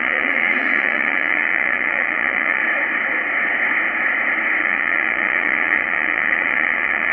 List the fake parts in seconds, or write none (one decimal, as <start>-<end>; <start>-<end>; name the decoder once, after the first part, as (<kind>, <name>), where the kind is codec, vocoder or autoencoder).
0.0-2.6 (vocoder, Vocos); 4.6-7.1